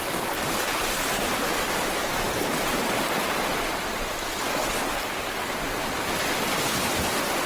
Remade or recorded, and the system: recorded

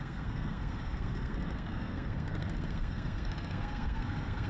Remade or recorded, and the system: remade, codec, SNAC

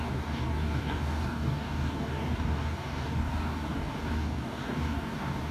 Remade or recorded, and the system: remade, codec, DAC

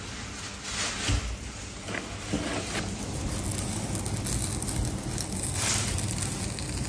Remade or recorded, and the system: recorded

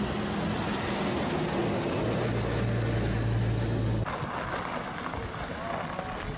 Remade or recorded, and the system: recorded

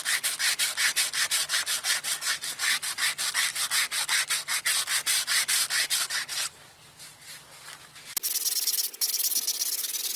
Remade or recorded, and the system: recorded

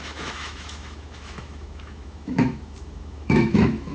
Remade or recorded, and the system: remade, autoencoder, DAC-VAE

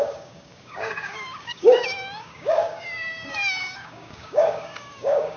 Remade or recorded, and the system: remade, codec, DAC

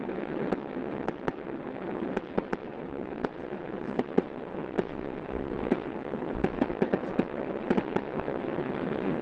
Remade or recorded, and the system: remade, vocoder, WaveNeXt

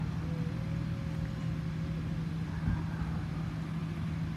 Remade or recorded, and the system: recorded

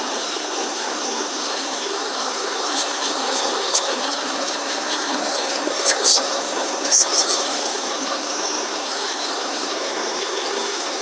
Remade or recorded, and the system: remade, codec, SNAC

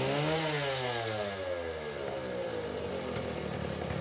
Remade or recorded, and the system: recorded